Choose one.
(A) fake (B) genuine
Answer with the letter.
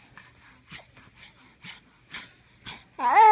B